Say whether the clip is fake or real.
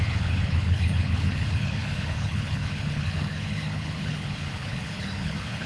fake